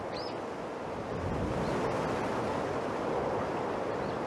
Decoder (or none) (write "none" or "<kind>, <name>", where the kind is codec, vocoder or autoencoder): none